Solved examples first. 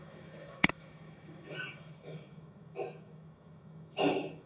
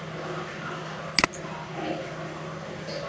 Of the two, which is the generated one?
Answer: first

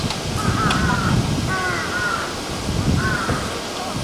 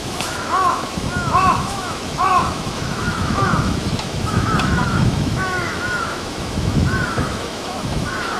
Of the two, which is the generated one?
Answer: second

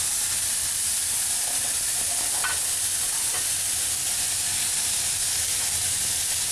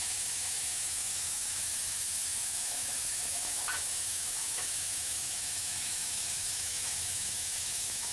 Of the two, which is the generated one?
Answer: second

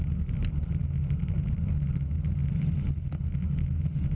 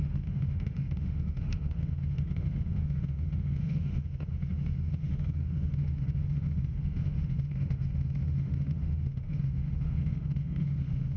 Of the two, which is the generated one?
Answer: second